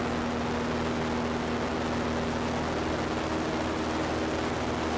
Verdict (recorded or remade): recorded